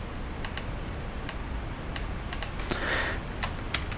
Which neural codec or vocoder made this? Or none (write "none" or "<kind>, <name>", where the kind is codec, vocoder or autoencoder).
none